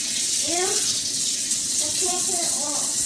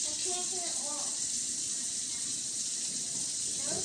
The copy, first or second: first